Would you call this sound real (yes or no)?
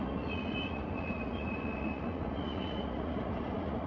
no